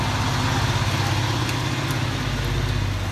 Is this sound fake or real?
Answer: real